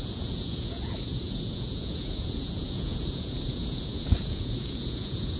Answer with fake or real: fake